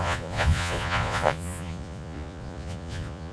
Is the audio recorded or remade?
remade